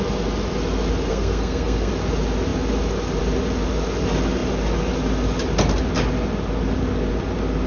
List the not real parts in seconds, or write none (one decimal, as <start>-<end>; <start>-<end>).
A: 1.1-1.9